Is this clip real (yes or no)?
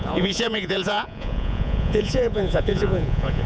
no